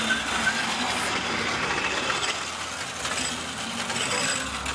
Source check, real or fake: real